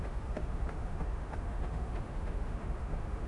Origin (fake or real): fake